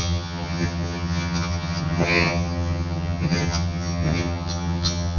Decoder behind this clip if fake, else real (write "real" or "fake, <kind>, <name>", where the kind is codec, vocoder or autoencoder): fake, vocoder, HiFi-GAN